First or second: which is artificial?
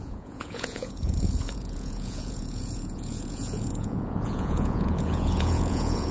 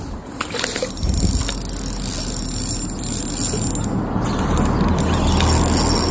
first